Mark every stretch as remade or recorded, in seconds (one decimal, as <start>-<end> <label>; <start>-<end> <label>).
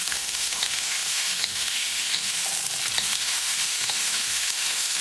0.0-2.4 remade; 2.4-3.0 recorded; 3.0-5.0 remade